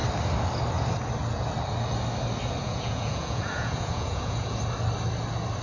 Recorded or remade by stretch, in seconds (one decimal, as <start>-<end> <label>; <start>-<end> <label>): 0.0-2.6 recorded; 2.6-4.6 remade; 4.6-5.6 recorded